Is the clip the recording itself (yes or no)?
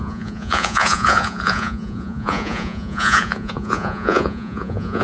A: no